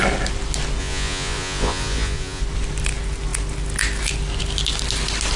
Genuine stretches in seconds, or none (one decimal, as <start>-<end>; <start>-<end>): 0.0-0.8; 2.4-5.4